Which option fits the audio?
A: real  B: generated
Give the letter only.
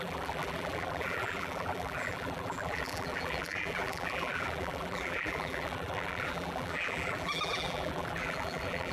B